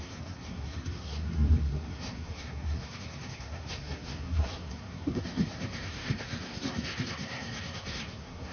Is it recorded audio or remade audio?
remade